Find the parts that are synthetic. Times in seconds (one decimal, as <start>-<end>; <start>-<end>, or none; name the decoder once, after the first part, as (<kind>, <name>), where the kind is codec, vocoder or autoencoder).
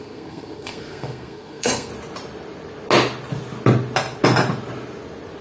0.0-1.9 (codec, SNAC)